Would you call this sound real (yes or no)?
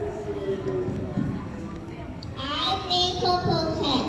no